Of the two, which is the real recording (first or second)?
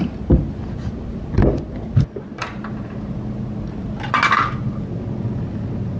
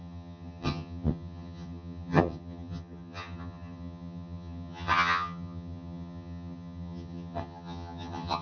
first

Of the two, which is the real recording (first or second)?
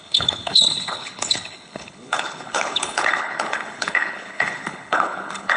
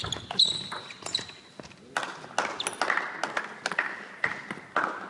second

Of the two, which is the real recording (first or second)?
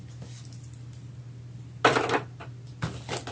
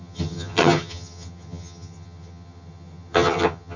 first